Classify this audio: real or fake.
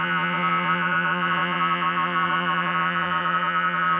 fake